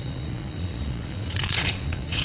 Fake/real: fake